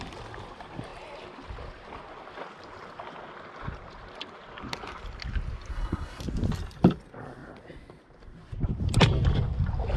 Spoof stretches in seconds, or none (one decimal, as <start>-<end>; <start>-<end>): 5.7-6.2